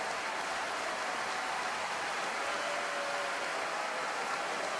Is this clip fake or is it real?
real